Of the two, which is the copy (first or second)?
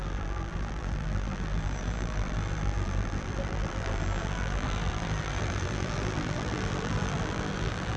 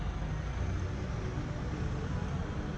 first